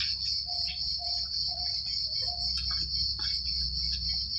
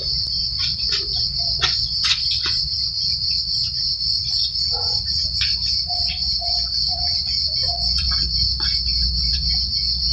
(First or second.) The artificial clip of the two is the second